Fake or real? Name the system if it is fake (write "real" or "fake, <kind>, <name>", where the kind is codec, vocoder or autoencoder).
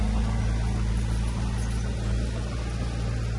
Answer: real